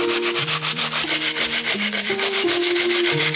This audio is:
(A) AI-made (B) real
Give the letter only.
A